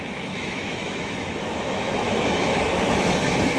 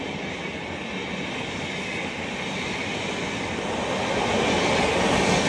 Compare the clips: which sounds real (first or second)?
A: second